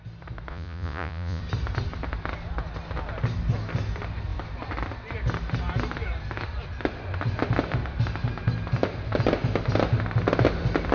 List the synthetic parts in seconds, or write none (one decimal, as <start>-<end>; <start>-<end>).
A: 0.5-1.4